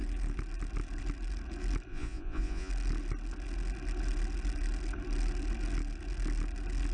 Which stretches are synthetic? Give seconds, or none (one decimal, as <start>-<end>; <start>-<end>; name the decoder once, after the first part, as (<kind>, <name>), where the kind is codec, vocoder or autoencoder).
1.9-2.7 (vocoder, Vocos)

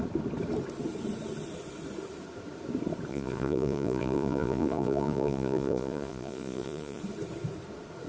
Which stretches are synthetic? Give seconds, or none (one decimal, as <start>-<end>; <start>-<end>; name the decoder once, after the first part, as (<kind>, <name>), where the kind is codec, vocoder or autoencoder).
3.1-7.0 (vocoder, Vocos)

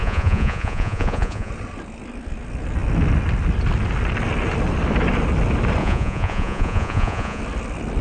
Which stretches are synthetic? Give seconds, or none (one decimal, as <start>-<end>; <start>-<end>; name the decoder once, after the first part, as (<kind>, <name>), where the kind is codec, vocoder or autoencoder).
0.0-1.5 (vocoder, Vocos); 5.8-7.4